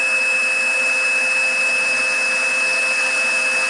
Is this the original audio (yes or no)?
yes